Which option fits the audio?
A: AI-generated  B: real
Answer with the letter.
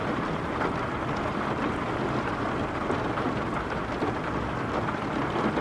B